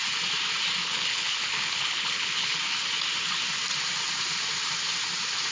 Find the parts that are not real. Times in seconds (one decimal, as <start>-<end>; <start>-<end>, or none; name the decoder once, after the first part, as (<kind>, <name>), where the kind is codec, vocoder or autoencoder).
0.8-2.6 (codec, HILCodec)